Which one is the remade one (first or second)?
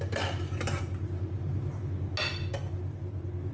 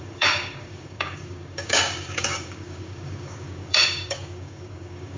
second